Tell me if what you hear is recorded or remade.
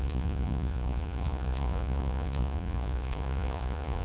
remade